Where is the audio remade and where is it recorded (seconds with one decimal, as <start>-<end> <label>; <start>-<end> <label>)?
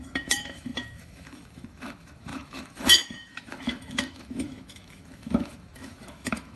0.0-6.6 remade